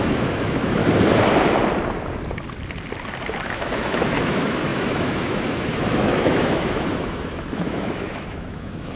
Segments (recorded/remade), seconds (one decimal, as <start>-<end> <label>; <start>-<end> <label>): 0.0-0.8 remade; 0.8-3.5 recorded; 3.5-9.0 remade